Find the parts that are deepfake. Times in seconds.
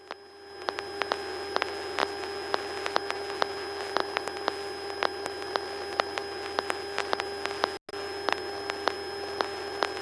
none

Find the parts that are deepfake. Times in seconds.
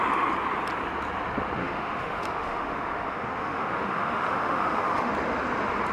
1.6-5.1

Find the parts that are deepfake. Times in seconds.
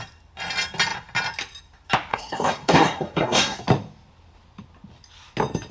2.1-3.6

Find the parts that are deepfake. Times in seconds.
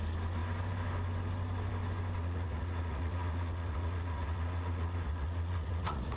2.2-6.2